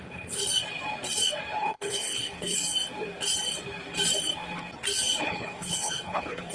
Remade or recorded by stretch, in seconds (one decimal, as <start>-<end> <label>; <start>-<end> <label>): 0.0-0.4 remade; 0.4-1.6 recorded; 1.6-2.6 remade; 2.6-5.2 recorded; 5.2-6.5 remade